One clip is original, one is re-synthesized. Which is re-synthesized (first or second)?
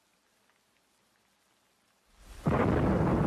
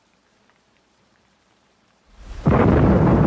second